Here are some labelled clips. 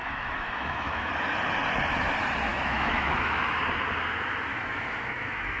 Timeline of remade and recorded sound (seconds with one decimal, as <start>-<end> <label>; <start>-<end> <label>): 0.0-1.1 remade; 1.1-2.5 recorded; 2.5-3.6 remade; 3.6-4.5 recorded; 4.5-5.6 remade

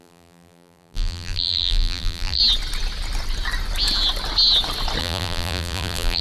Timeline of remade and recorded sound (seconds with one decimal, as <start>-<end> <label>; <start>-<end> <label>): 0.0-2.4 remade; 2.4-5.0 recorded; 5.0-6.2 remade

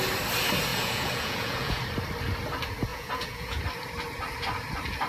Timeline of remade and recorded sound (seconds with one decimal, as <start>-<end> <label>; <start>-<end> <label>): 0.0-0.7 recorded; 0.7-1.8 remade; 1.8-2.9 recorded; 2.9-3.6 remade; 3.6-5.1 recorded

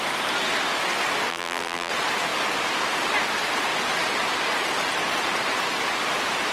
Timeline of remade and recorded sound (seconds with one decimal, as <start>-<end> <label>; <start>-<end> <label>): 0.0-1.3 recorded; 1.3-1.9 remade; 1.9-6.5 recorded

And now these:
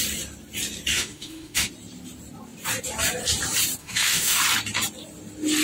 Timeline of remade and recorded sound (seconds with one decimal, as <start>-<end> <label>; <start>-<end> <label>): 0.0-0.9 recorded; 0.9-1.7 remade; 1.7-3.8 recorded; 3.8-4.4 remade; 4.4-5.6 recorded